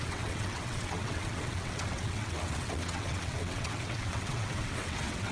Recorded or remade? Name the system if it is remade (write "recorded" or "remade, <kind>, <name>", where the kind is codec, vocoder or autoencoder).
remade, vocoder, WaveNeXt